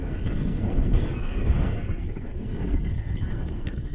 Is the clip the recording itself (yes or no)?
no